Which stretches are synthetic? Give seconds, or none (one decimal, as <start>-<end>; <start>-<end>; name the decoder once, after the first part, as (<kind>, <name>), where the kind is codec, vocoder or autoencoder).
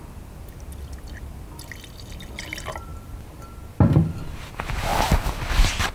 4.9-5.4 (vocoder, BigVGAN v2)